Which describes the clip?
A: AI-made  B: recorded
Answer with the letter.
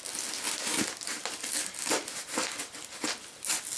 B